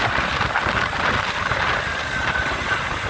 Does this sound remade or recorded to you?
recorded